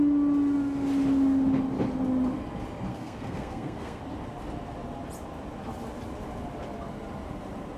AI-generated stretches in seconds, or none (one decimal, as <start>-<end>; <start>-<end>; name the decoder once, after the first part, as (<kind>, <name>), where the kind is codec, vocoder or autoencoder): 2.9-4.0 (codec, SNAC)